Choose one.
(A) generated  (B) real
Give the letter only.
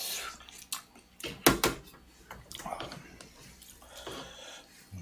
B